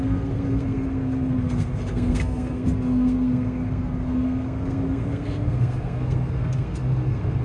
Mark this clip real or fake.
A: fake